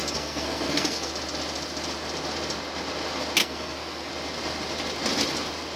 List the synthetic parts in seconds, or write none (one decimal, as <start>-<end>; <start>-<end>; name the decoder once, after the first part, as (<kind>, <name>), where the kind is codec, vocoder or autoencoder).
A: 0.0-1.1 (codec, SNAC); 3.4-4.1

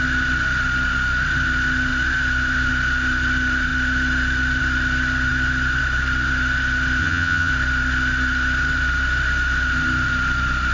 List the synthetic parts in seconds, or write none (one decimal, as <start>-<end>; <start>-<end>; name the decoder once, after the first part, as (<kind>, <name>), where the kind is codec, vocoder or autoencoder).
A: 7.0-7.5 (vocoder, HiFi-GAN)

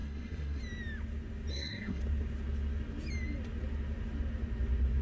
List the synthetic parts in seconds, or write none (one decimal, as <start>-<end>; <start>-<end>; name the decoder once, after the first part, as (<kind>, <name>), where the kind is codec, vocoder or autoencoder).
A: 0.0-0.6 (codec, SNAC); 1.5-2.0